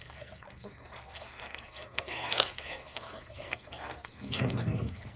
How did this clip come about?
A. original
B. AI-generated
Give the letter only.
B